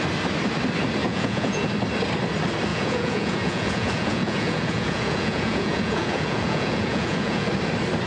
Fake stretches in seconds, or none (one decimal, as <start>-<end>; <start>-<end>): 1.0-1.7; 2.7-7.5